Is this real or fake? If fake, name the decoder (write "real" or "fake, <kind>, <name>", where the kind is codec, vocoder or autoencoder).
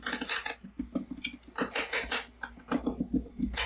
real